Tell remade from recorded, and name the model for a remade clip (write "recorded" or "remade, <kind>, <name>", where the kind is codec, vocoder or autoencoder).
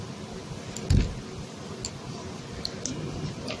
recorded